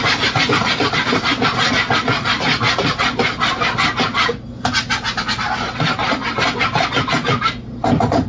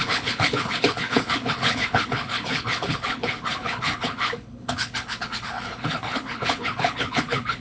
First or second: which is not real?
second